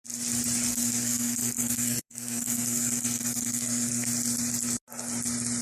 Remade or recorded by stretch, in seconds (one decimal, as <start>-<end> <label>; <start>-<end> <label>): 0.0-0.7 recorded; 0.7-4.1 remade; 4.1-5.6 recorded